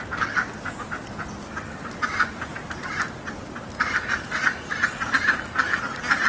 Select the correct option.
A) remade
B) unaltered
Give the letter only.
B